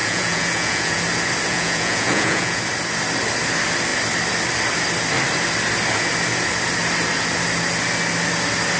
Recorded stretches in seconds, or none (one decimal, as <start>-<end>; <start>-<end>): 1.0-1.5; 2.6-8.8